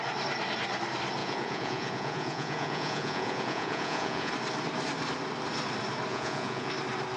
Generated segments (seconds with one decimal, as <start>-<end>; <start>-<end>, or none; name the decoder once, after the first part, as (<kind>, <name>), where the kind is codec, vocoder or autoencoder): 1.2-4.3 (vocoder, Vocos); 6.1-6.7